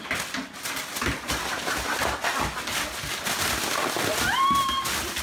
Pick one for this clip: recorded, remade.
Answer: recorded